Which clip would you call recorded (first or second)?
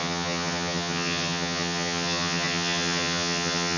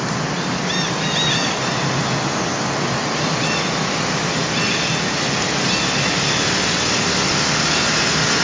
second